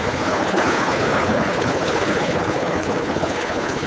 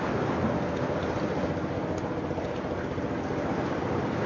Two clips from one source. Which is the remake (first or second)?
first